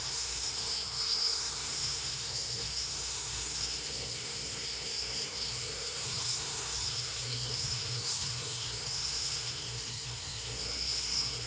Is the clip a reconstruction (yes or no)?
yes